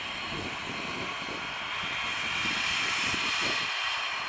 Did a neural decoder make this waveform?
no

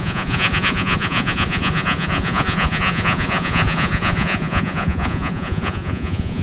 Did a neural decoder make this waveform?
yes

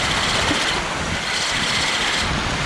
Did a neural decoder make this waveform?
no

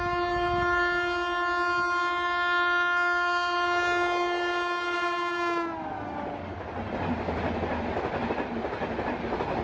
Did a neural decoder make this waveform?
no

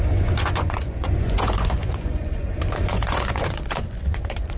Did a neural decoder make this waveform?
yes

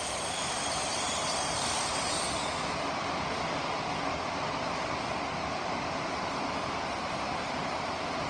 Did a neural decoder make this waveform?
no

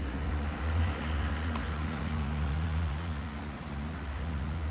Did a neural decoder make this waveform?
yes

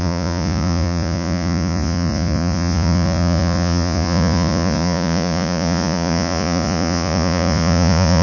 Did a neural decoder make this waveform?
yes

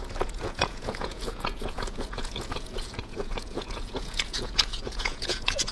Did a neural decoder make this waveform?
yes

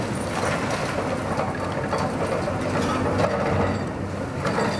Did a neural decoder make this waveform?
no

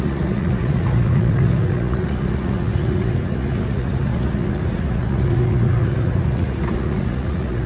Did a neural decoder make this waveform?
yes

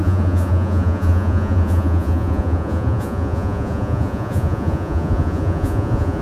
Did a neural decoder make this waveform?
yes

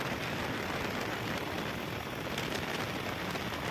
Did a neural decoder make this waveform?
no